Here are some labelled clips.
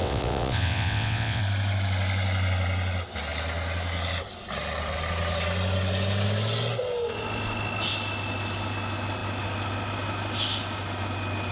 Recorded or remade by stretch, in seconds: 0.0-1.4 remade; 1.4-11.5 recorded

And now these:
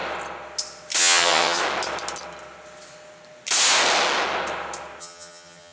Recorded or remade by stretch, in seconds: 0.0-1.0 recorded; 1.0-1.6 remade; 1.6-5.0 recorded; 5.0-5.7 remade

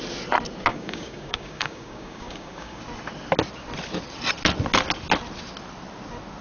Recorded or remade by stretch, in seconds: 0.0-0.7 recorded; 0.7-2.8 remade; 2.8-6.4 recorded

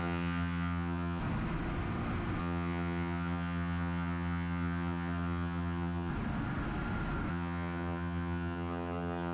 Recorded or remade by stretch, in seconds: 0.0-1.2 remade; 1.2-2.4 recorded; 2.4-6.1 remade; 6.1-7.3 recorded; 7.3-9.3 remade